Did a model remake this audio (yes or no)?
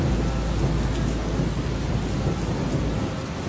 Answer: no